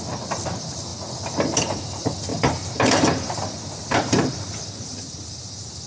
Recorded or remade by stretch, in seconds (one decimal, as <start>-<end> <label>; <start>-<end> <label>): 0.0-2.3 recorded; 2.3-5.2 remade; 5.2-5.9 recorded